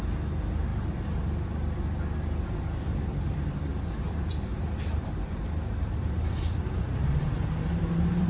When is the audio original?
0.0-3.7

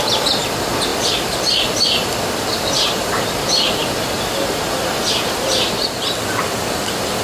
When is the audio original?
0.0-7.2